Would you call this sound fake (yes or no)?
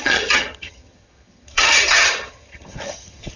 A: yes